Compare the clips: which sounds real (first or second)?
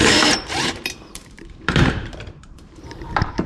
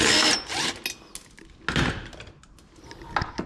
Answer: second